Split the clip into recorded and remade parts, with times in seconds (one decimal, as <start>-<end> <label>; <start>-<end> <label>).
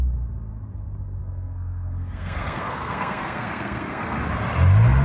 0.0-1.2 recorded; 1.2-4.2 remade; 4.2-5.0 recorded